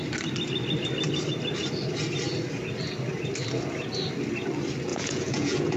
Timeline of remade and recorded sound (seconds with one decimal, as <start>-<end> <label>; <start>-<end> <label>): 0.0-4.9 recorded; 4.9-5.8 remade